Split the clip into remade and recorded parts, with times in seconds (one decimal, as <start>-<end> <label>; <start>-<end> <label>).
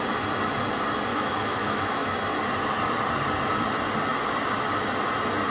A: 0.0-1.1 recorded; 1.1-2.1 remade; 2.1-5.5 recorded